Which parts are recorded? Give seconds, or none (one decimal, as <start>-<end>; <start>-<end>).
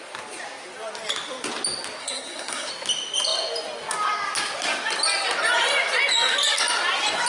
0.0-2.0; 2.7-7.3